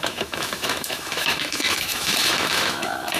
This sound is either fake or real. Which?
fake